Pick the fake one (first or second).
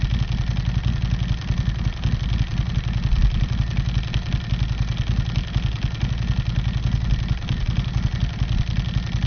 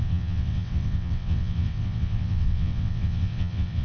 second